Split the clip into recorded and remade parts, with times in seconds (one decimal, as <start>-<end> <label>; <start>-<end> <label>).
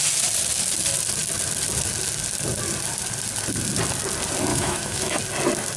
0.0-4.5 recorded; 4.5-5.2 remade; 5.2-5.8 recorded